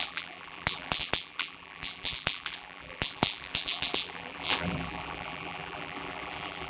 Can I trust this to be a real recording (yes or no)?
no